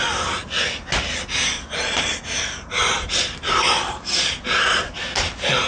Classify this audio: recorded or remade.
recorded